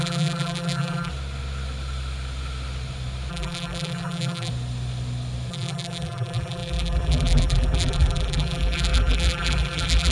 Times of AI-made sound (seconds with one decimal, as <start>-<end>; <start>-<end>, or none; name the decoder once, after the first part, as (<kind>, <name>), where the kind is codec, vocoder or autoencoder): 0.0-1.1 (vocoder, BigVGAN v2); 3.3-4.5; 5.5-10.1